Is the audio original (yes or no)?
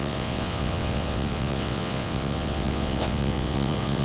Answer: no